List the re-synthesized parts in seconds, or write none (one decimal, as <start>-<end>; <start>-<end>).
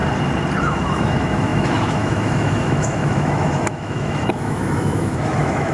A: 0.6-5.7